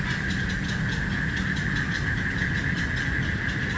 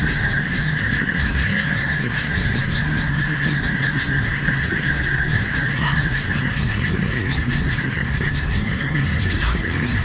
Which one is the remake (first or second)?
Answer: second